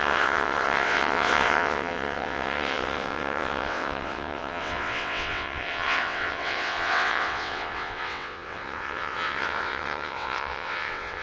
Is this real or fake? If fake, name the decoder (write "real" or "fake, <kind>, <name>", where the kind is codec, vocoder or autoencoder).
fake, vocoder, WaveNeXt